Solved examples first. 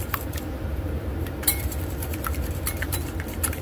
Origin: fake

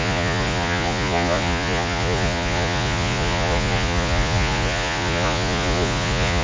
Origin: fake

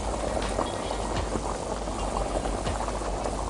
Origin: real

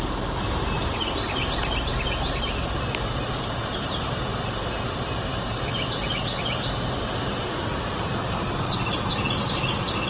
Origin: real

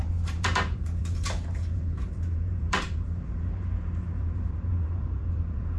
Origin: fake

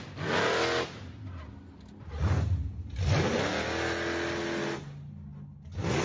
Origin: real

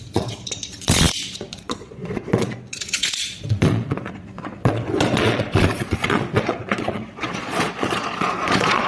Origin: fake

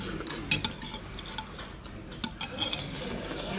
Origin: real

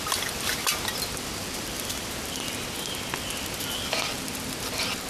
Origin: fake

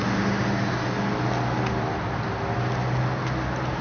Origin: real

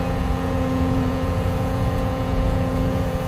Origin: fake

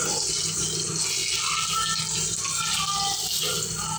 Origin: real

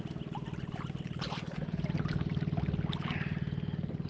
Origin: real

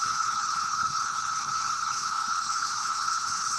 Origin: fake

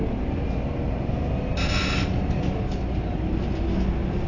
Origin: real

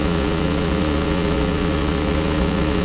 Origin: fake